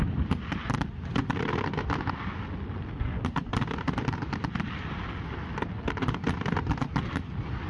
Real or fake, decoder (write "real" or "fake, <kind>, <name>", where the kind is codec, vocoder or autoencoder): real